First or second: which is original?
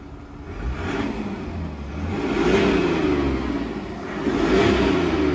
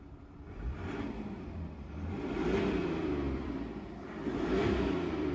first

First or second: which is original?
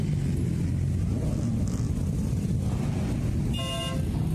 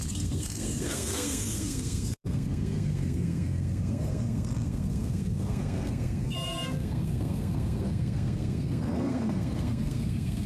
first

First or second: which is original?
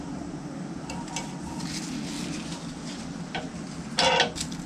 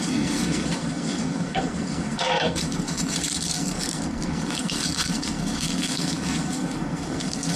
first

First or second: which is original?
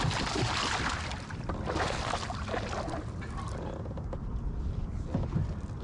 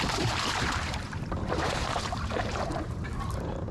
first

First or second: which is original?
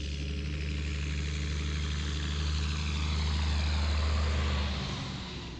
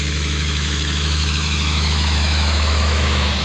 first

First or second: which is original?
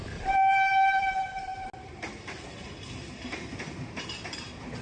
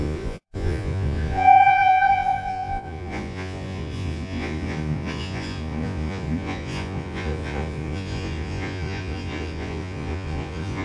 first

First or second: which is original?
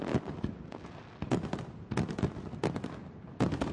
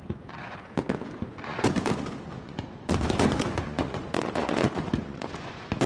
first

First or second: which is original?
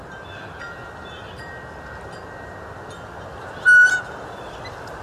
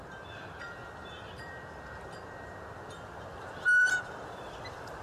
first